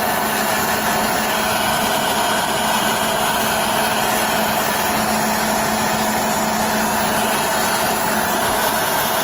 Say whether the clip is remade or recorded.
recorded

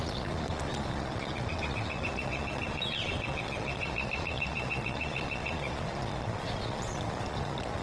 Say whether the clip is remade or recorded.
remade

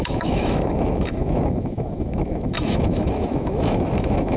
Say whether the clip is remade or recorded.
remade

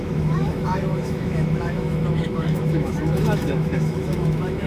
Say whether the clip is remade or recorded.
remade